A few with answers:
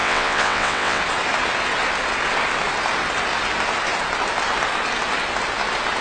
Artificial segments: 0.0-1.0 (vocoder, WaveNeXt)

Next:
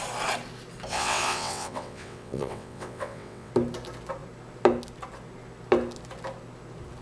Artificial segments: 0.9-3.5 (vocoder, WaveNeXt)

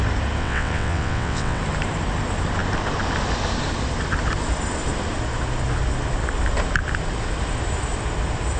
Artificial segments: 0.4-1.6 (vocoder, WaveNeXt)